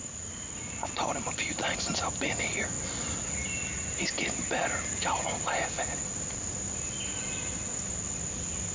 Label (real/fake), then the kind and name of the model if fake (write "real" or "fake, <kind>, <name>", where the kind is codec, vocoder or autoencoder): real